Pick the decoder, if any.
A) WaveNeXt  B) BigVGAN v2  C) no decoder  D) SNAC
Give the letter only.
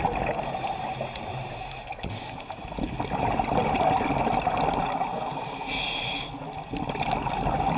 C